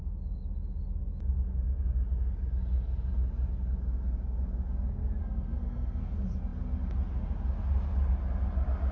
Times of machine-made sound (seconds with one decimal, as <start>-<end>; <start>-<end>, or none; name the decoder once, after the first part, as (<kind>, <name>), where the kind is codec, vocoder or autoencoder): 5.2-6.1 (codec, SNAC)